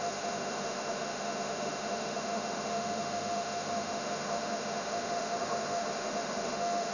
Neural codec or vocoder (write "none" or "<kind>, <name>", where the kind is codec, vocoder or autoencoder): autoencoder, DAC-VAE